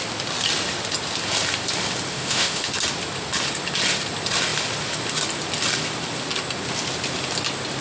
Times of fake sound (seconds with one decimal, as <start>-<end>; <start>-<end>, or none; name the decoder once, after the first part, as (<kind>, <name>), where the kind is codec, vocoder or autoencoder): 2.1-2.7 (autoencoder, DAC-VAE)